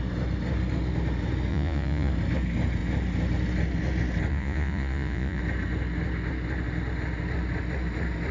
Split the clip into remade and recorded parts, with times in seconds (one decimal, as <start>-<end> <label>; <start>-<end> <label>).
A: 0.0-1.5 recorded; 1.5-2.1 remade; 2.1-4.3 recorded; 4.3-5.4 remade; 5.4-8.3 recorded